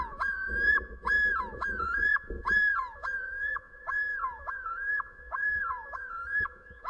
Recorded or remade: remade